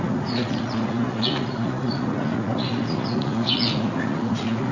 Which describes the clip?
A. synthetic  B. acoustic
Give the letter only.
A